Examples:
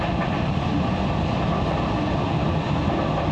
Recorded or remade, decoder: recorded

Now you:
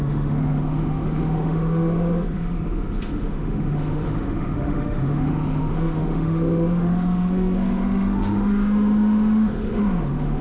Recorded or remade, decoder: remade, autoencoder, DAC-VAE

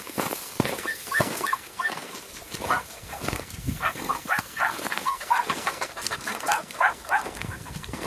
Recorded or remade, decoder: remade, codec, SNAC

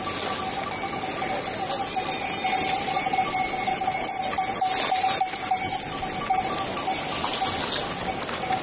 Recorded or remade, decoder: recorded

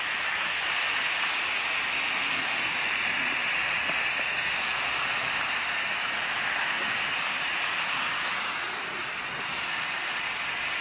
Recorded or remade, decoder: recorded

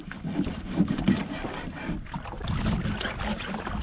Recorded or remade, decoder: recorded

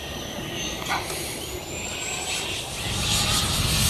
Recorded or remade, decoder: recorded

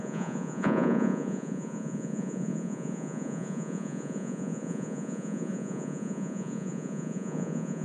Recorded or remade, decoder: remade, vocoder, Vocos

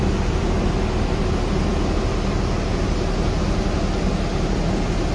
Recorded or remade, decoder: recorded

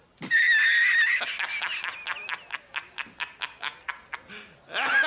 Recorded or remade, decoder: recorded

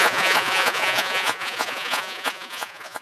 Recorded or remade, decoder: remade, vocoder, Vocos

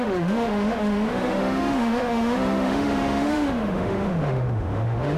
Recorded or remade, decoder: remade, autoencoder, DAC-VAE